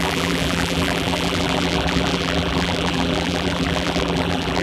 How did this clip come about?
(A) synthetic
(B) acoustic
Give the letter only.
A